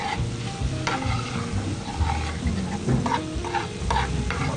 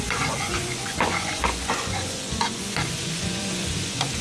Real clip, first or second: first